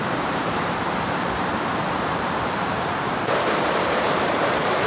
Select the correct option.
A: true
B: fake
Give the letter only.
B